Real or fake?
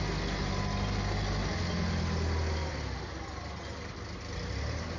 real